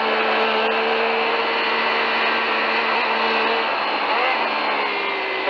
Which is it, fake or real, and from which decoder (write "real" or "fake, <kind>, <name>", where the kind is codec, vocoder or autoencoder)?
real